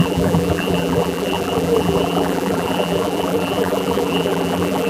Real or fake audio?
fake